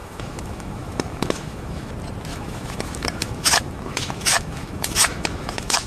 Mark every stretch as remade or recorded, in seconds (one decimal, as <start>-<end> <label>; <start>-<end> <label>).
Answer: 0.0-1.9 remade; 1.9-2.3 recorded; 2.3-5.9 remade